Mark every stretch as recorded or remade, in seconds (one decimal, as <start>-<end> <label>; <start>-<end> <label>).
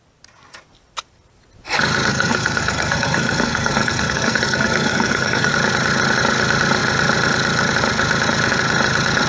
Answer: 0.0-2.1 recorded; 2.1-5.5 remade; 5.5-9.3 recorded